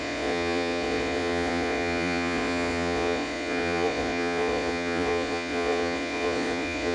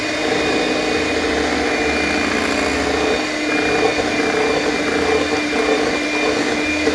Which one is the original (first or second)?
second